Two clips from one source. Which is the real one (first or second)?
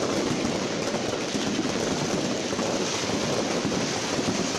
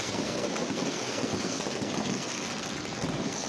first